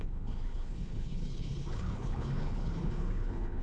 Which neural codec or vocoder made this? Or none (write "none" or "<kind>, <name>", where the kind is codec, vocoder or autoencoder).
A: codec, HILCodec